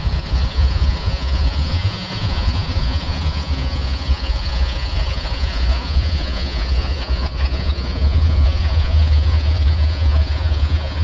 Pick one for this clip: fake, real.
fake